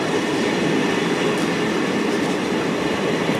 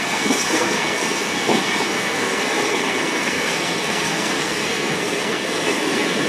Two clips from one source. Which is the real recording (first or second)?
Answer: first